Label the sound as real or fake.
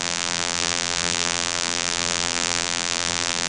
fake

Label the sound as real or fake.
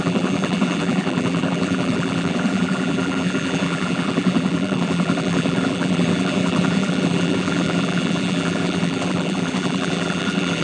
fake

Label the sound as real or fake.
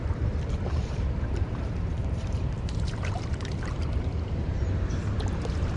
fake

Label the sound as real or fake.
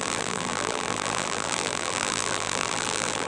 fake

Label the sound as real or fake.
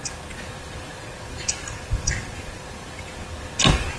fake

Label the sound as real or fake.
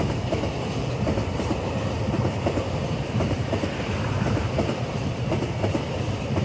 fake